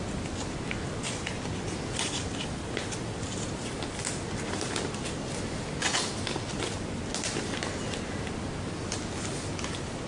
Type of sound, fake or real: real